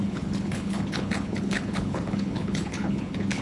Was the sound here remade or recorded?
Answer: remade